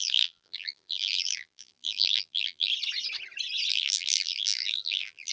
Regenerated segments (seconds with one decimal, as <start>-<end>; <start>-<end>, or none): 0.0-2.7; 3.7-5.3